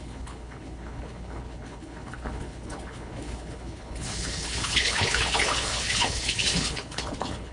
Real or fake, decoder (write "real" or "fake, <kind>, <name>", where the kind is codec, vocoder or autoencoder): fake, codec, HILCodec